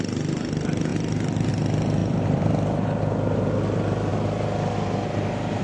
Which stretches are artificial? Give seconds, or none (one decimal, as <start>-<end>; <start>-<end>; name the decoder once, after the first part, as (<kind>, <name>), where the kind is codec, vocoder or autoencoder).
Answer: 0.9-1.5 (vocoder, BigVGAN v2); 2.0-2.5